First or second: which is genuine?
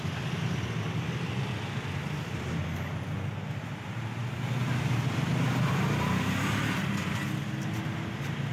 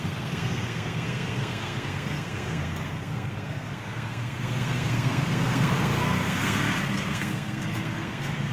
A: first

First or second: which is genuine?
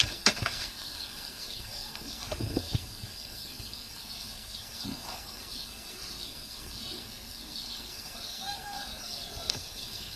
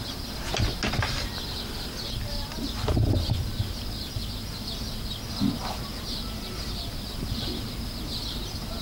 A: second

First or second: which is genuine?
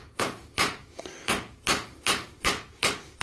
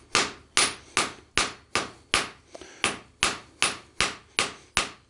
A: second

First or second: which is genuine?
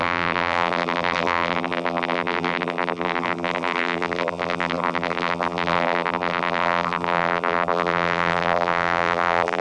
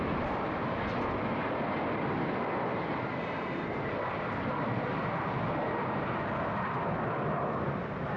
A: second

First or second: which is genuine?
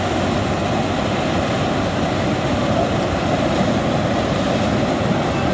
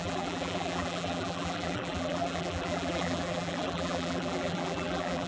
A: first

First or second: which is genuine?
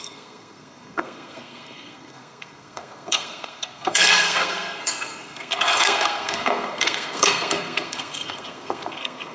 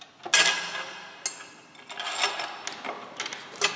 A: second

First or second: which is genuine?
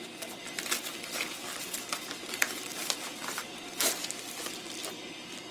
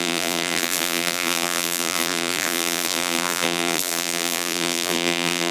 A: first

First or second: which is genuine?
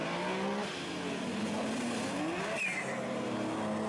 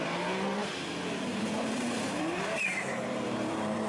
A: first